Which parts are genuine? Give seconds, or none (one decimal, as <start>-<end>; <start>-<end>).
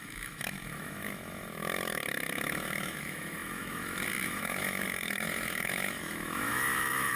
none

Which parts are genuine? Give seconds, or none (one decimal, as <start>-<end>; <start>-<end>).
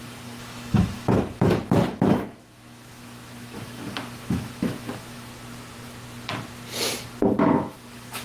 5.3-7.2